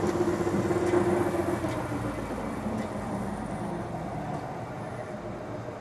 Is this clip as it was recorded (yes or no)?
yes